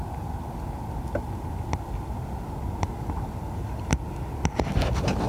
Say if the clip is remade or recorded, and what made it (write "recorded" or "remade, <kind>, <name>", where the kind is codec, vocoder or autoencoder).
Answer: recorded